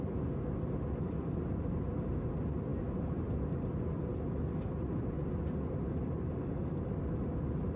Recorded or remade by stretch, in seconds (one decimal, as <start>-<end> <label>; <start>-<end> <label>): 0.0-7.8 recorded